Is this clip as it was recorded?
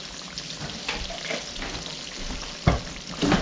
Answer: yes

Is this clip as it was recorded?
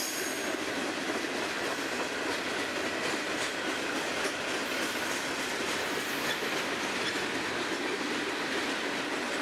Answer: yes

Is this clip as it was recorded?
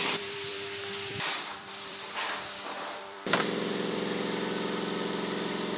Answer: no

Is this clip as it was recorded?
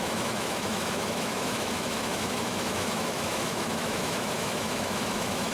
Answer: no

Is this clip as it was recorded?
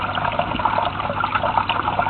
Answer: yes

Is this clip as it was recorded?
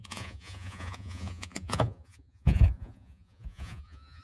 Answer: no